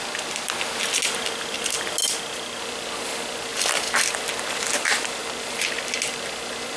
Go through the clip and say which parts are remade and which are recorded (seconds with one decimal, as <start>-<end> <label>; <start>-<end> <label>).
0.0-6.8 recorded